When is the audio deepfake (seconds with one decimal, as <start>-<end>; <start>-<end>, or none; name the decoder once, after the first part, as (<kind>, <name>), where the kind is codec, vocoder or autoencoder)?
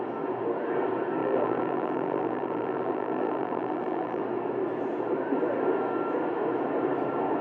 1.2-4.2 (vocoder, BigVGAN v2)